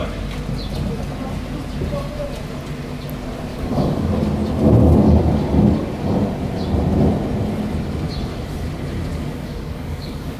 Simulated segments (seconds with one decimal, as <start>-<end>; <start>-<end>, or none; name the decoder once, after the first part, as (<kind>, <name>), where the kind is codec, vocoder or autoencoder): 3.5-4.1 (codec, DAC); 9.1-10.4